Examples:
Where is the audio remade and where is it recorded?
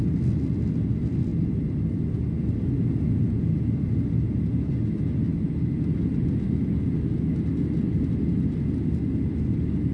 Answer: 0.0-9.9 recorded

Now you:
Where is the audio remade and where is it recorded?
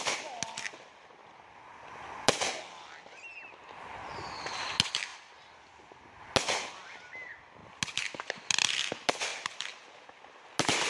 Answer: 0.0-1.7 recorded; 1.7-2.6 remade; 2.6-9.3 recorded; 9.3-9.9 remade; 9.9-10.9 recorded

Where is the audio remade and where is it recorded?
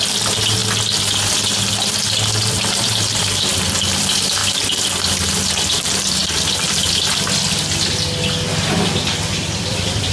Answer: 0.0-0.6 remade; 0.6-2.5 recorded; 2.5-4.4 remade; 4.4-5.7 recorded; 5.7-6.2 remade; 6.2-9.4 recorded; 9.4-10.1 remade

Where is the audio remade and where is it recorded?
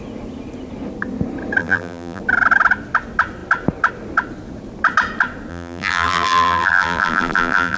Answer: 0.0-1.6 recorded; 1.6-2.2 remade; 2.2-5.5 recorded; 5.5-7.8 remade